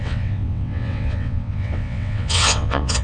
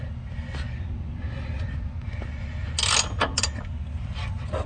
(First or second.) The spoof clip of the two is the first